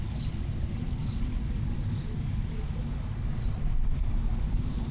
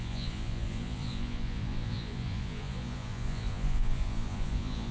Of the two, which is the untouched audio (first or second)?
first